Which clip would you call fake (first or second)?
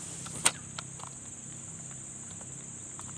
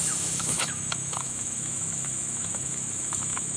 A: second